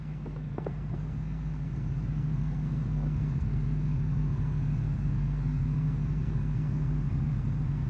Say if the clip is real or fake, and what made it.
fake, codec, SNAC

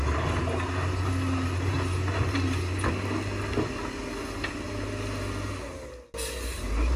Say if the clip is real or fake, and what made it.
real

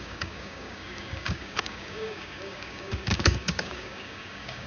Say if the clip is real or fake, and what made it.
fake, codec, DAC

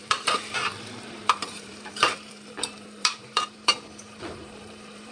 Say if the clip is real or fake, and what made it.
fake, vocoder, BigVGAN v2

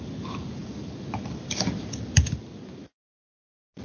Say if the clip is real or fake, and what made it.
real